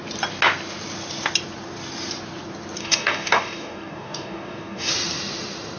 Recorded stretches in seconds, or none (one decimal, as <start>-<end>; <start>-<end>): 0.0-2.8; 4.9-5.8